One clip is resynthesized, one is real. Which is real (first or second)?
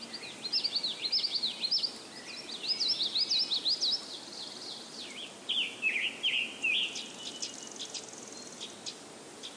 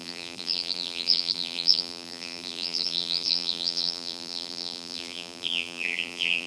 first